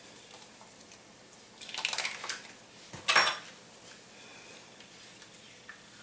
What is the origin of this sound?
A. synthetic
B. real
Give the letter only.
B